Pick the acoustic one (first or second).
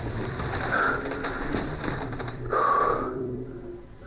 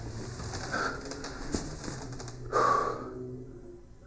second